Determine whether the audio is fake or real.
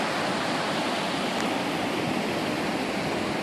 real